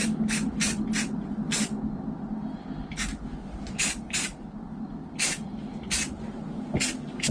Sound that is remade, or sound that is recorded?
recorded